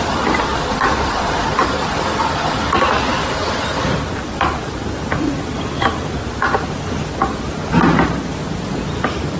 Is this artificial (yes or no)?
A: no